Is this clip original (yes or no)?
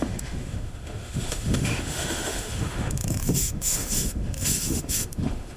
no